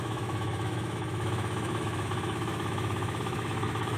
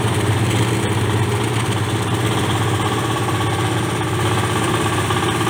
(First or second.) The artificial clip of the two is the first